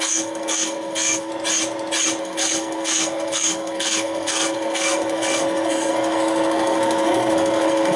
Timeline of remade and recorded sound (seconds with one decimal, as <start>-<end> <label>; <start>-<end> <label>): 0.0-1.3 remade; 1.3-2.2 recorded; 2.2-8.0 remade